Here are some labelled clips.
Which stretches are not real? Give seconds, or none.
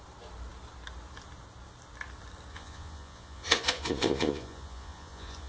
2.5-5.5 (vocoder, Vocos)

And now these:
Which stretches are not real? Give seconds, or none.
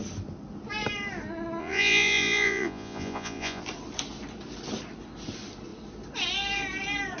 1.6-3.6 (vocoder, Vocos)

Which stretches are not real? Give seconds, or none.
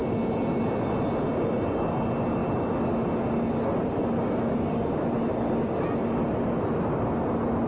none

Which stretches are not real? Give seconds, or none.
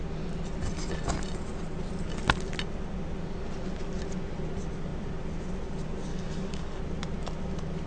6.1-6.8 (codec, DAC)